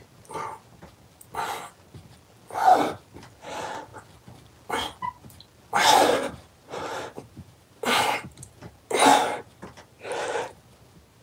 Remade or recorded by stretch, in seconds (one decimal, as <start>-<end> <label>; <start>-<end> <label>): 0.0-5.8 recorded; 5.8-8.3 remade; 8.3-9.1 recorded; 9.1-10.1 remade; 10.1-11.2 recorded